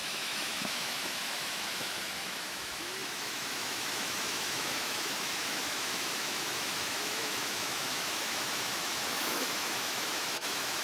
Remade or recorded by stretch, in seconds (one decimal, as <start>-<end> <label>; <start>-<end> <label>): 0.0-10.8 remade